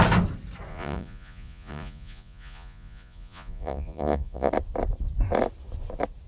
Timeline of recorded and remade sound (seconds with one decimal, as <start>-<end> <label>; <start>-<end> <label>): 0.0-0.7 recorded; 0.7-4.5 remade; 4.5-6.3 recorded